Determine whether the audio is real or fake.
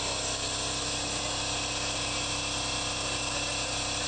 real